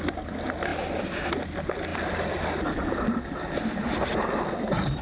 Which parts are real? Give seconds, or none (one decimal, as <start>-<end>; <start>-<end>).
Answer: 0.0-0.7; 1.3-1.9; 4.0-5.0